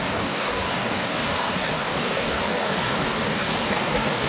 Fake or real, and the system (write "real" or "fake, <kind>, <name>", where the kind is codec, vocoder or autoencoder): fake, codec, DAC